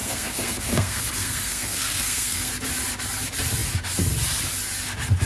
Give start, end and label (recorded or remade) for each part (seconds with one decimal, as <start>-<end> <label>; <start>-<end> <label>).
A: 0.0-2.5 remade; 2.5-5.3 recorded

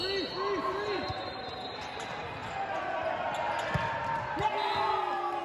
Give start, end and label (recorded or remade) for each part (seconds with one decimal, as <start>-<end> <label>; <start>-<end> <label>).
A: 0.0-5.4 recorded